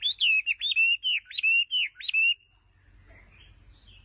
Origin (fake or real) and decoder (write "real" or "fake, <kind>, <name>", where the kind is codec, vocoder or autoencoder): real